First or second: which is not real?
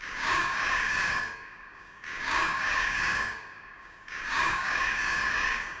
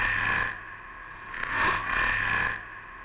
first